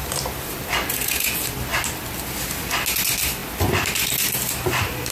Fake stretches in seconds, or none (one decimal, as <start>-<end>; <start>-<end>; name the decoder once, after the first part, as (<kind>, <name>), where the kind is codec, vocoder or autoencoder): 0.0-0.6 (vocoder, BigVGAN v2)